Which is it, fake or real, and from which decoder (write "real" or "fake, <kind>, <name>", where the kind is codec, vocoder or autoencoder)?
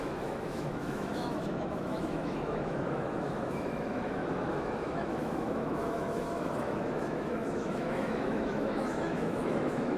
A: fake, autoencoder, DAC-VAE